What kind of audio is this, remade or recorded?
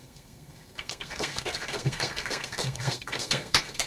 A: remade